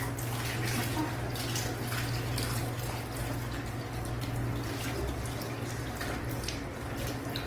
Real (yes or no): yes